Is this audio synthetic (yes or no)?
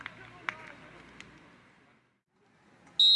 no